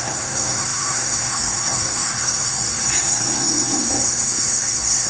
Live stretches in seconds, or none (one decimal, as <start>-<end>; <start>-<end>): none